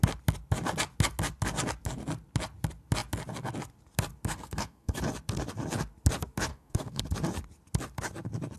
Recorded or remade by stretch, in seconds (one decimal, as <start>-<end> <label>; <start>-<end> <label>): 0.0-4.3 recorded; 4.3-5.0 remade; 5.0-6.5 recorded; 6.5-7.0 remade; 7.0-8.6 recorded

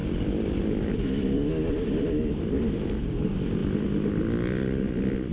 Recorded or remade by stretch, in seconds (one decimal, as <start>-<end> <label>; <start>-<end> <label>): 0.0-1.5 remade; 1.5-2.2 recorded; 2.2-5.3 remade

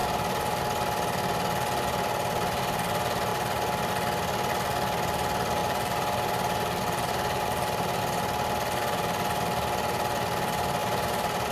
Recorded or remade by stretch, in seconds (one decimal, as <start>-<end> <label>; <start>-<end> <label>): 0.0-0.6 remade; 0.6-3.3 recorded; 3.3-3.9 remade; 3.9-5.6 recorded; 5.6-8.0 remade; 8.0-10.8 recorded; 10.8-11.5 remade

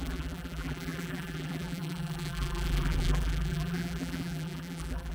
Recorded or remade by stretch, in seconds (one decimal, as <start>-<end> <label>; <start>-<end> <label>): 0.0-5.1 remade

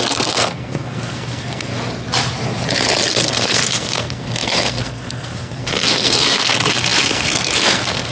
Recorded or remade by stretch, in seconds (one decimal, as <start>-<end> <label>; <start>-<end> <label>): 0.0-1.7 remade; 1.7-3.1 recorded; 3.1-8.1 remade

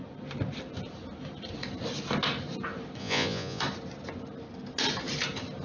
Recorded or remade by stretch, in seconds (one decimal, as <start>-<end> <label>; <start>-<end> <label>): 0.0-3.0 recorded; 3.0-3.6 remade; 3.6-5.6 recorded

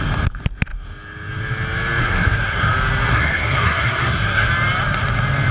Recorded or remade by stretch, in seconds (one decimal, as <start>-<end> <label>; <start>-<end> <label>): 0.0-2.0 recorded; 2.0-2.7 remade; 2.7-3.1 recorded; 3.1-4.5 remade; 4.5-5.5 recorded